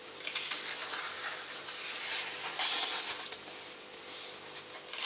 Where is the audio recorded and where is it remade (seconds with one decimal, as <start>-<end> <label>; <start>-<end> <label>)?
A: 0.0-0.8 recorded; 0.8-1.8 remade; 1.8-5.1 recorded